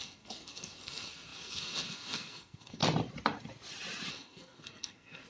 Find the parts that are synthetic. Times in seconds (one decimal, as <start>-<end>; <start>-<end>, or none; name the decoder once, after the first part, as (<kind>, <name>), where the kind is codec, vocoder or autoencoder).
0.0-2.8 (codec, SNAC); 4.1-5.3